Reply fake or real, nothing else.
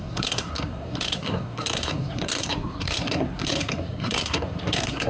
fake